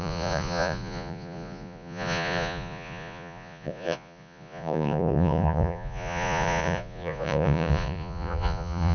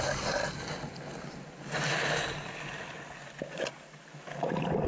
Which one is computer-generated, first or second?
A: first